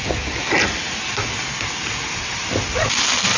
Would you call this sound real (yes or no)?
yes